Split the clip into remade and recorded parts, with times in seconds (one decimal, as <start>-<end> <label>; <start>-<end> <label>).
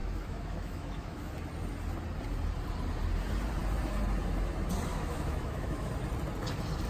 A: 0.0-1.3 remade; 1.3-4.9 recorded; 4.9-5.9 remade; 5.9-6.9 recorded